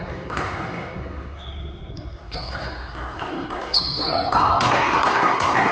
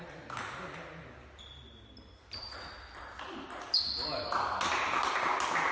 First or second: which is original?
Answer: second